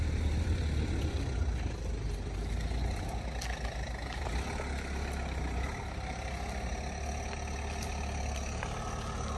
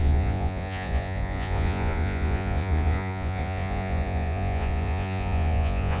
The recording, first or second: first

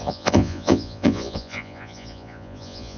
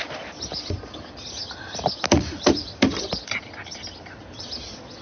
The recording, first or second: second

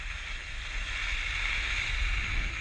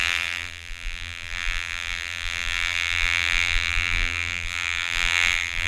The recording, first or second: first